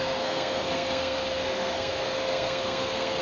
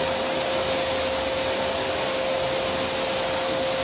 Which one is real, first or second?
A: second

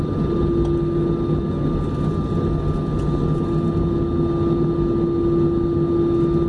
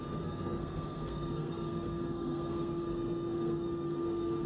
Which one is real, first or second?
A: first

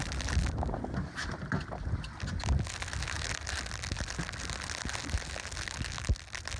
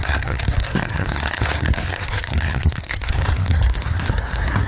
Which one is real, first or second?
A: first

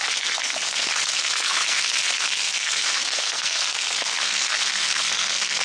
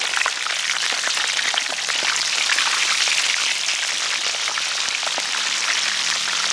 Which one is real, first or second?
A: second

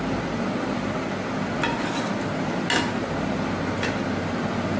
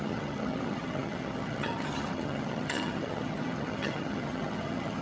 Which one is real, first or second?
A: first